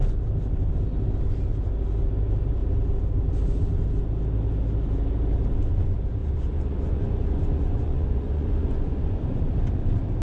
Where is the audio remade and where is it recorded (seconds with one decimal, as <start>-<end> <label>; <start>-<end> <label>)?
0.0-6.2 recorded; 6.2-9.4 remade; 9.4-10.2 recorded